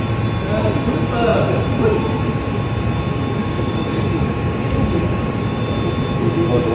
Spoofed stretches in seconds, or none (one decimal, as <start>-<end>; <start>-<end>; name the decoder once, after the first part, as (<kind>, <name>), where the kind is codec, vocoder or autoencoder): 3.4-5.6 (codec, DAC)